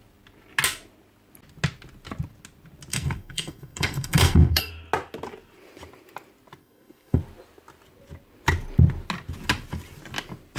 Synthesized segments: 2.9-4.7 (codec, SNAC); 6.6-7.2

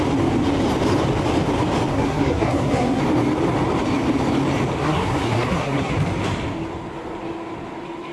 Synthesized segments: 1.9-3.0 (codec, SNAC); 4.8-5.9

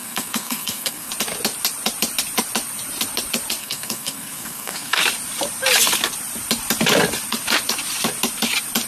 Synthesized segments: 0.0-1.1 (codec, SNAC); 3.6-5.0